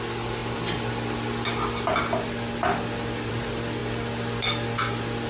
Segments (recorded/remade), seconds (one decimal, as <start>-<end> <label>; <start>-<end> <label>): 0.0-5.3 recorded